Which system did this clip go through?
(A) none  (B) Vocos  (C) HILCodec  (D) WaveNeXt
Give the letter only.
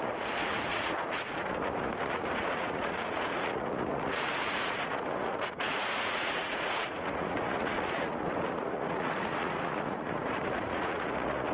B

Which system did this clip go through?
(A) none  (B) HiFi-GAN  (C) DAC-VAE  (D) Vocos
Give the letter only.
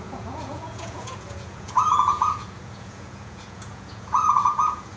D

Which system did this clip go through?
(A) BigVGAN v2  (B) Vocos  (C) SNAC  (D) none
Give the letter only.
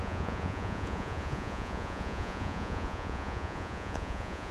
B